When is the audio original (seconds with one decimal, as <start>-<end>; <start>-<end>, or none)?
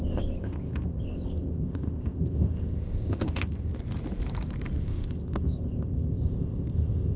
3.8-4.8